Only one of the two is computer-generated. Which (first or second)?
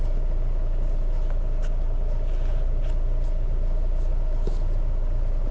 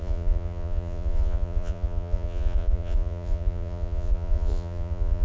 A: second